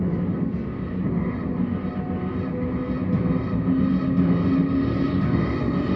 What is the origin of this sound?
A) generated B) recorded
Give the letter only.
B